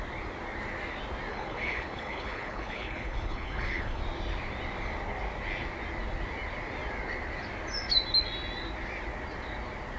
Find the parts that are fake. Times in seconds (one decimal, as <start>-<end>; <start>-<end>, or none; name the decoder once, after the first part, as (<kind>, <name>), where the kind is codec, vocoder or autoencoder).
1.3-4.0 (codec, HILCodec)